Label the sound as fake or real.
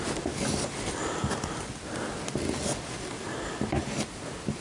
real